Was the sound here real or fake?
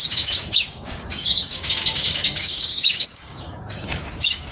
fake